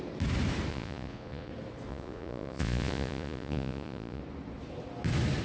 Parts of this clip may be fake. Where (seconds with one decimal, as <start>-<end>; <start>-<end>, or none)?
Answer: 0.7-1.5; 1.9-4.2